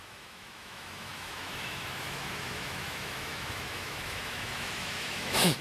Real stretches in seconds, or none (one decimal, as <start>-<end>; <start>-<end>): none